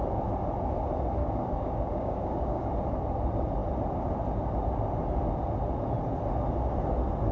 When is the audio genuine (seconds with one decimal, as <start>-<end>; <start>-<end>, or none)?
0.0-1.2; 2.7-7.3